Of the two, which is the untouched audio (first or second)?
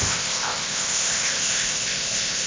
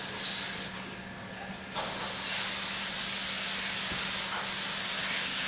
second